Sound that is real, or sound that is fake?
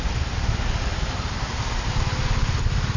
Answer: real